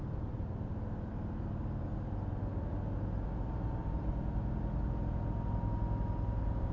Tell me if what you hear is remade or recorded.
recorded